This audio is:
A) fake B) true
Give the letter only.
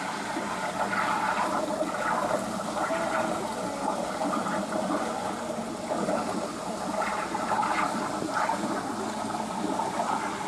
B